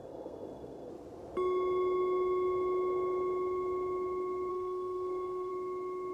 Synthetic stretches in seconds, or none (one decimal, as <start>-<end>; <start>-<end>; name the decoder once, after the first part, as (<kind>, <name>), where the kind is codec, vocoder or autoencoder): 0.0-0.9 (codec, SNAC); 4.5-5.5

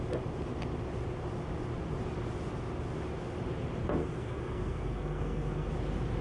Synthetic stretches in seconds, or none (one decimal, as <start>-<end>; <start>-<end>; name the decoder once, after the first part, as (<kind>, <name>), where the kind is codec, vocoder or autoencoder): 4.0-5.7 (codec, SNAC)

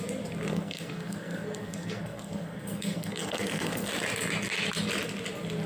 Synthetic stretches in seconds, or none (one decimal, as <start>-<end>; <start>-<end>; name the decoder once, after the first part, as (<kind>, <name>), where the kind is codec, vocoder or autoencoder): 0.5-3.9 (codec, SNAC)

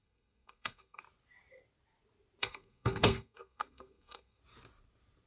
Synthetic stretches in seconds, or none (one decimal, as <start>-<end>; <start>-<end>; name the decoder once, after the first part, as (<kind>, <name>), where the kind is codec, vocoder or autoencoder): 0.0-1.0 (codec, SNAC); 2.4-4.4

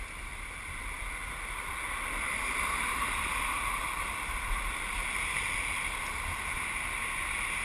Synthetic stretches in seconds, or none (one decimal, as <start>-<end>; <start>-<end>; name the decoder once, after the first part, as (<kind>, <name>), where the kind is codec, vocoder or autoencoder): none

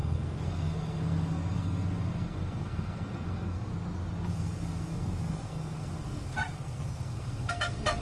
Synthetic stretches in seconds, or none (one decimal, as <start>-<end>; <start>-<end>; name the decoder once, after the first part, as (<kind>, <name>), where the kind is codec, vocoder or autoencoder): 0.0-3.7 (codec, SNAC); 4.3-8.0